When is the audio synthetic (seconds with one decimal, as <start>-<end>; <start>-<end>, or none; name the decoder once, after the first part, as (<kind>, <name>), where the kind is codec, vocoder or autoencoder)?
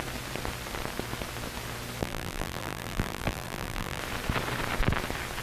2.0-4.0 (vocoder, BigVGAN v2)